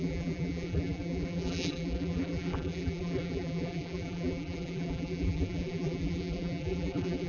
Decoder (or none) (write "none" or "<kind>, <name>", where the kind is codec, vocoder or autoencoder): vocoder, BigVGAN v2